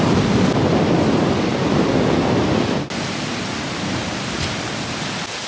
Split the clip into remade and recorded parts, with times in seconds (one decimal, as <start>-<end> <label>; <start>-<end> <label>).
0.0-5.5 recorded